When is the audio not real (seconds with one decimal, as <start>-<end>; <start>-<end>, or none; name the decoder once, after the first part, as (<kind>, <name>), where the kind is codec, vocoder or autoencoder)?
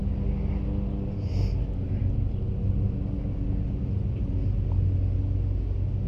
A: none